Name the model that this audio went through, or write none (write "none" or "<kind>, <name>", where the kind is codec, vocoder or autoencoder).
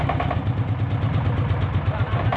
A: none